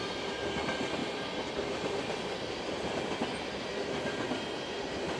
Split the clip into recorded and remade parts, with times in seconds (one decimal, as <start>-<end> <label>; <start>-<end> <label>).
0.0-5.2 recorded

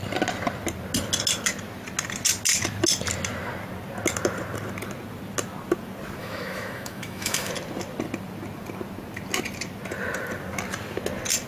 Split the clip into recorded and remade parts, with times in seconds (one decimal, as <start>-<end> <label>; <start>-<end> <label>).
0.0-6.2 recorded; 6.2-7.5 remade; 7.5-11.5 recorded

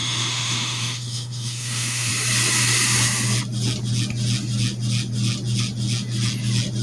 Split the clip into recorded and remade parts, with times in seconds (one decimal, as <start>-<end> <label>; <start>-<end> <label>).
0.0-2.1 remade; 2.1-6.8 recorded